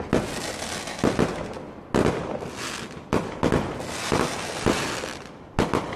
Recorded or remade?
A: recorded